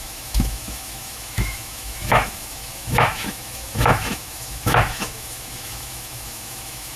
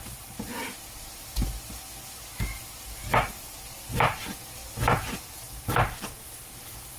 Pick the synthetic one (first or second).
first